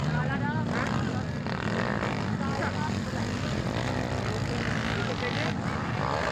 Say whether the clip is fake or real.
real